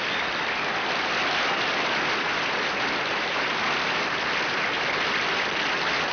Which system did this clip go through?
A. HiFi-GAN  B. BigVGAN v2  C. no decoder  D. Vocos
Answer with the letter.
C